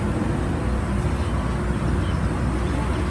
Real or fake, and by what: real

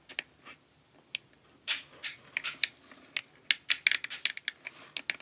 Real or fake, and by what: real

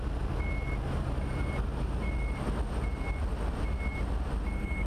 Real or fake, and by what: real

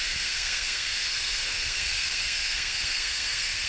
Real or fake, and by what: fake, codec, SNAC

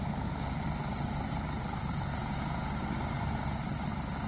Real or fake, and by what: fake, vocoder, BigVGAN v2